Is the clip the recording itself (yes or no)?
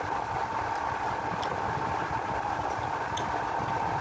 yes